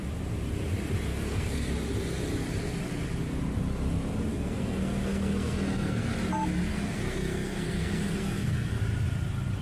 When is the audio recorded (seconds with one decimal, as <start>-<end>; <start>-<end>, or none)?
0.0-1.1; 1.7-4.3; 6.1-6.7; 8.8-9.6